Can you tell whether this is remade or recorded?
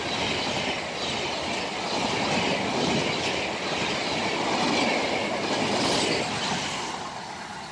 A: recorded